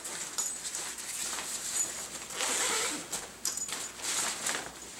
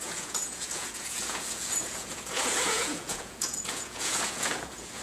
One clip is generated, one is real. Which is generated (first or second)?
second